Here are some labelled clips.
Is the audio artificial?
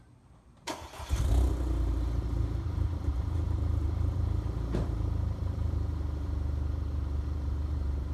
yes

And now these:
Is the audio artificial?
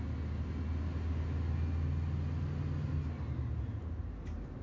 no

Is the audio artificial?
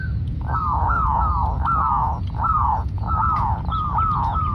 yes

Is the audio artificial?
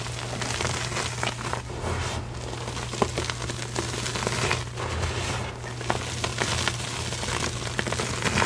no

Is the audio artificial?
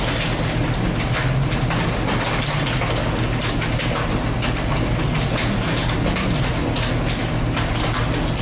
no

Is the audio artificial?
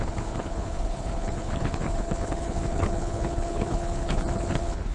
yes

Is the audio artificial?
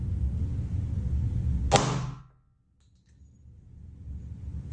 no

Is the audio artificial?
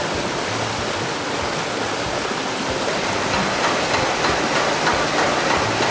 no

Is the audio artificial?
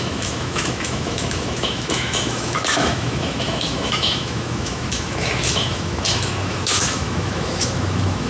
yes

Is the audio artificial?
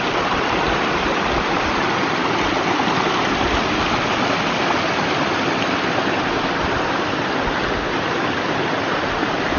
no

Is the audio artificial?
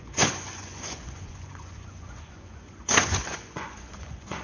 yes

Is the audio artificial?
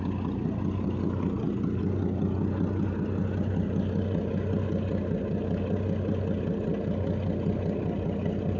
no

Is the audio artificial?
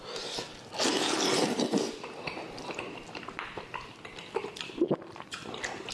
yes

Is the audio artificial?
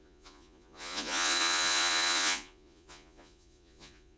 yes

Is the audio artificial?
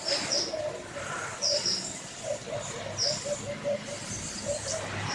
no